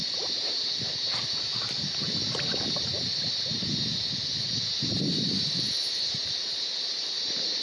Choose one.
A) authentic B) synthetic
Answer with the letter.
A